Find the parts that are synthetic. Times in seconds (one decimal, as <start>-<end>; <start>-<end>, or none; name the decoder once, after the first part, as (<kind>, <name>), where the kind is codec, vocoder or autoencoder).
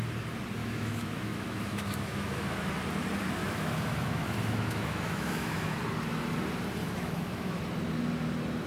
0.6-2.7 (autoencoder, DAC-VAE); 3.4-5.8; 6.8-7.6